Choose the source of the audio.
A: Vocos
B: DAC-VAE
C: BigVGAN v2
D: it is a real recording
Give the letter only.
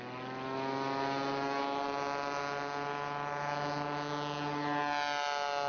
D